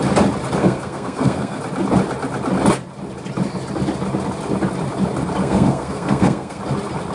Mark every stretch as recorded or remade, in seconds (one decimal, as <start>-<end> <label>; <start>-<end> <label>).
0.0-0.6 recorded; 0.6-1.6 remade; 1.6-5.4 recorded; 5.4-6.6 remade; 6.6-7.1 recorded